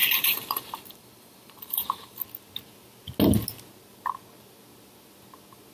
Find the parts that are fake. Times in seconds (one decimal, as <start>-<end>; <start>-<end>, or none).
0.0-2.2